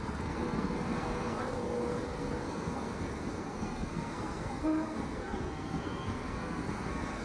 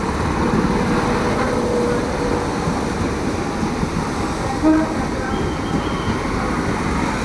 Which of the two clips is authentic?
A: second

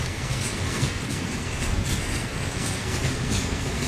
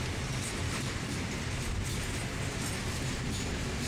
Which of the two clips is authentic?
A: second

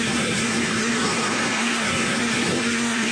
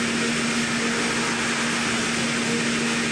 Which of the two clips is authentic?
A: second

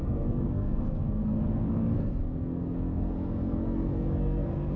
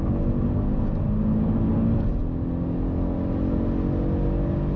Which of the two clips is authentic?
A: second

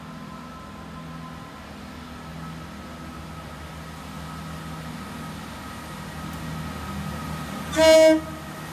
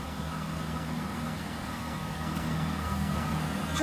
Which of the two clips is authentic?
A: first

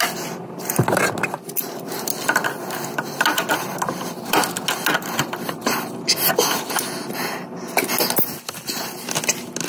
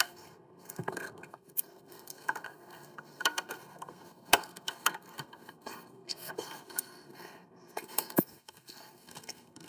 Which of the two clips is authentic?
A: first